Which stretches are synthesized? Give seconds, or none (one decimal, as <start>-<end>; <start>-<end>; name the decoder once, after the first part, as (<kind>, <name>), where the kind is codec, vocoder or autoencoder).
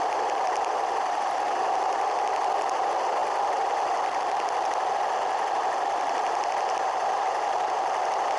none